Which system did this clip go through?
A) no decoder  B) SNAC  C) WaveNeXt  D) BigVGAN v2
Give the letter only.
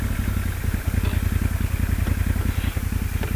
A